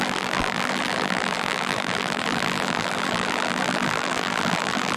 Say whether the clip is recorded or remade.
remade